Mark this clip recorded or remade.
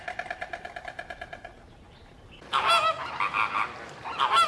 recorded